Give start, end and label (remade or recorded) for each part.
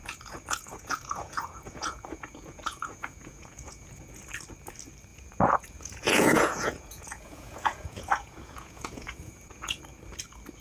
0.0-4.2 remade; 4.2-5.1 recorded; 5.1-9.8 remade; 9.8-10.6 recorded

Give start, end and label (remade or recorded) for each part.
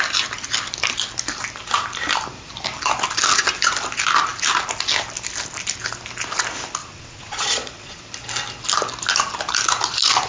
0.0-6.8 recorded; 6.8-8.0 remade; 8.0-10.3 recorded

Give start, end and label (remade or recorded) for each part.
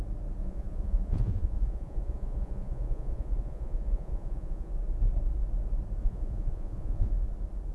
0.0-0.4 recorded; 0.4-4.7 remade; 4.7-6.0 recorded; 6.0-7.1 remade; 7.1-7.7 recorded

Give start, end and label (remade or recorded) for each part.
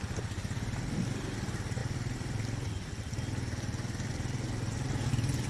0.0-5.5 recorded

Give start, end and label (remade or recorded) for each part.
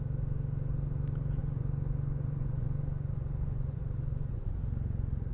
0.0-1.4 recorded; 1.4-4.5 remade; 4.5-5.3 recorded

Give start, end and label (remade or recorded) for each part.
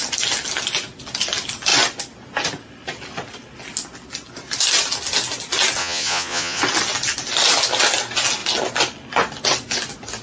0.0-5.8 recorded; 5.8-6.6 remade; 6.6-10.2 recorded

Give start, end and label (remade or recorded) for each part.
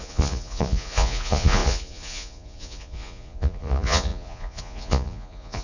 0.0-5.6 remade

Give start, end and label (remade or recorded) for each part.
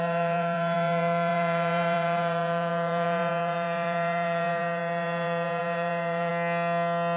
0.0-6.3 remade; 6.3-7.2 recorded